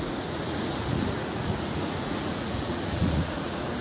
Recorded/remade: remade